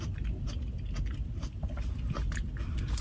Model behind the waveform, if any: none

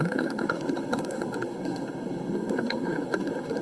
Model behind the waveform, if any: codec, SNAC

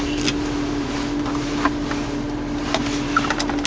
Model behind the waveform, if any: none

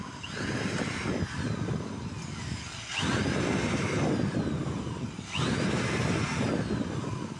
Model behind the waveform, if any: none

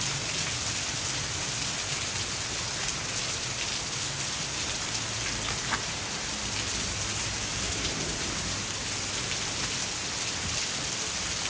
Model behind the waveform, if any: none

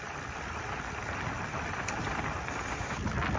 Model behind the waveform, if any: none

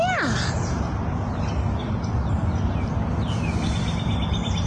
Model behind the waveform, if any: none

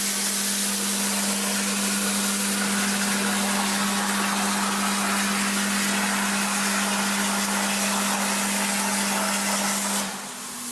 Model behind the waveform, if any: none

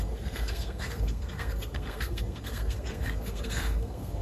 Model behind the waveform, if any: codec, SNAC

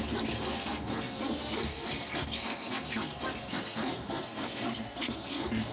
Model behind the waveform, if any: codec, SNAC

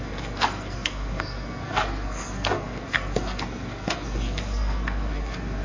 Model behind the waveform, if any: codec, SNAC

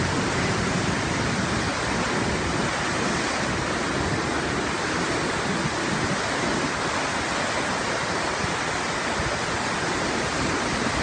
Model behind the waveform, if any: none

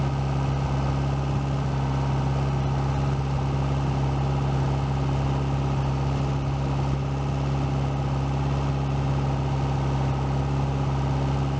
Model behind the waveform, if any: none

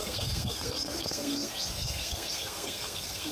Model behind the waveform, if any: codec, SNAC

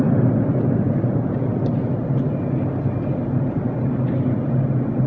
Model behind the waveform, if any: none